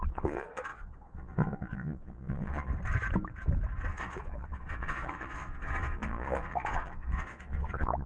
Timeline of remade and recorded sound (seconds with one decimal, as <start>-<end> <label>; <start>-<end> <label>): 0.0-2.7 remade; 2.7-3.9 recorded; 3.9-8.1 remade